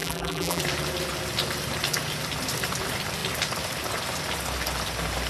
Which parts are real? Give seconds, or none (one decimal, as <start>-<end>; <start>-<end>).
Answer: 0.6-5.3